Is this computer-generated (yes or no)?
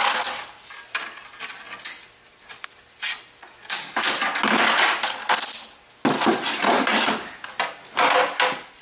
no